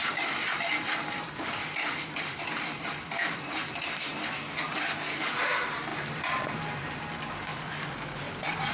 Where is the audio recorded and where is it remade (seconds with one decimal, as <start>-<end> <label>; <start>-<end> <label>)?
0.0-5.2 remade; 5.2-5.9 recorded; 5.9-7.0 remade; 7.0-7.5 recorded; 7.5-8.7 remade